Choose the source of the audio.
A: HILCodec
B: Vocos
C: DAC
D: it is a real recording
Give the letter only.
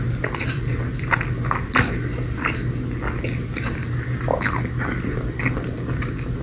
D